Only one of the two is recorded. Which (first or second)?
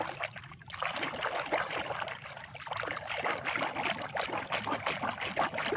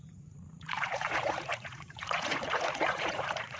first